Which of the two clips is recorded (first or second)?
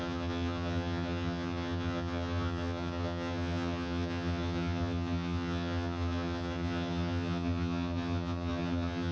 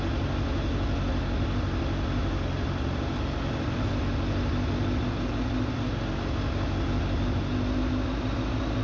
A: second